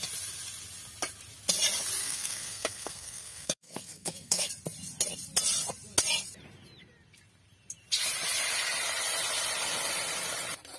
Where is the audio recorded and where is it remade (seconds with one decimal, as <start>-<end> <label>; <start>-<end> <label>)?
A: 0.0-2.0 recorded; 2.0-4.5 remade; 4.5-10.8 recorded